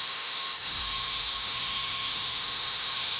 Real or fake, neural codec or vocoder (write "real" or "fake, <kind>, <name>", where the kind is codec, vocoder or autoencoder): fake, autoencoder, DAC-VAE